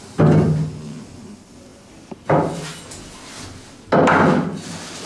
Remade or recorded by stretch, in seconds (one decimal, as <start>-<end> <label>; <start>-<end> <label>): 0.0-5.1 recorded